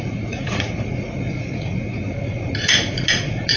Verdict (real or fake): fake